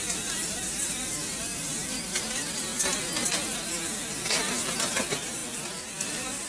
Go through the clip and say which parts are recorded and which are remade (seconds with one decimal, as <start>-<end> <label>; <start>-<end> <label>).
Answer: 0.0-2.7 remade; 2.7-4.8 recorded; 4.8-5.4 remade; 5.4-5.9 recorded; 5.9-6.5 remade